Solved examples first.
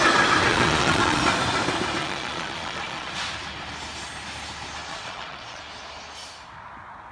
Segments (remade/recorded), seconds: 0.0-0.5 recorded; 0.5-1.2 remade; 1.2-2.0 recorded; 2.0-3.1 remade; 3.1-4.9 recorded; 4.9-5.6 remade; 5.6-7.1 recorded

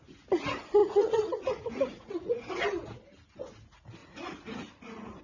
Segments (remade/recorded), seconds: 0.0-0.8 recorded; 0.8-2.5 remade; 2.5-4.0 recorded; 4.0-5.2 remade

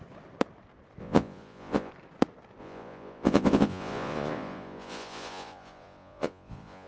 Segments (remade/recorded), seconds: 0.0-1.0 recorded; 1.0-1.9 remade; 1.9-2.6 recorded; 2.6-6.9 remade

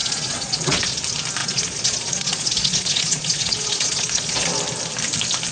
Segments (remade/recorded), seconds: 0.0-1.0 remade; 1.0-1.4 recorded; 1.4-4.5 remade; 4.5-5.5 recorded

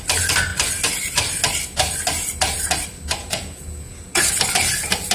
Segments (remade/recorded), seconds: 0.0-3.2 recorded; 3.2-4.2 remade; 4.2-5.1 recorded

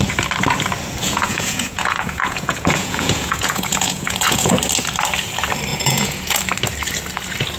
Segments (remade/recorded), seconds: 0.0-1.0 recorded; 1.0-4.5 remade; 4.5-5.7 recorded; 5.7-6.4 remade; 6.4-7.6 recorded

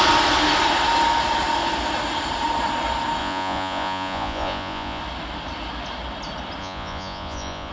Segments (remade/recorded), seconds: 0.0-3.2 recorded; 3.2-5.0 remade; 5.0-6.6 recorded; 6.6-7.7 remade

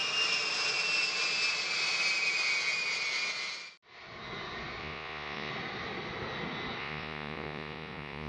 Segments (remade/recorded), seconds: 0.0-4.8 recorded; 4.8-5.5 remade; 5.5-6.8 recorded; 6.8-8.3 remade